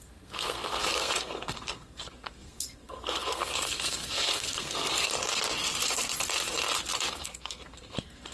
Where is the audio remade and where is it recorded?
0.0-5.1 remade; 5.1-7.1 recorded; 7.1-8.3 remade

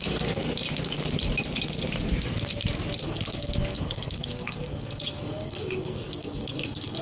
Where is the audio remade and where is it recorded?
0.0-0.4 remade; 0.4-3.0 recorded; 3.0-7.0 remade

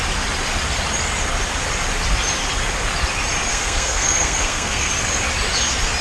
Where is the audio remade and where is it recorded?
0.0-3.5 recorded; 3.5-4.9 remade; 4.9-6.0 recorded